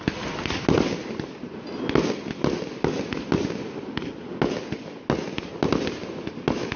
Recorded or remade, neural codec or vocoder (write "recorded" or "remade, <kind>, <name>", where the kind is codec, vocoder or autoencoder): recorded